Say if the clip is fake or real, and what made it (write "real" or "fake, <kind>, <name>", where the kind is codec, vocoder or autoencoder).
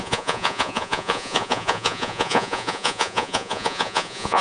fake, vocoder, Vocos